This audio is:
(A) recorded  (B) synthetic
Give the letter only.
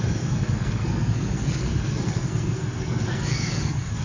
B